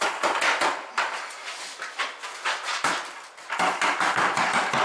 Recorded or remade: recorded